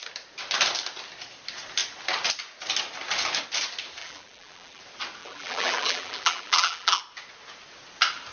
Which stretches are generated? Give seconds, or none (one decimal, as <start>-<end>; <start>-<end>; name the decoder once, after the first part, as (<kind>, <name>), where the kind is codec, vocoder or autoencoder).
4.0-4.8 (vocoder, BigVGAN v2); 5.2-7.0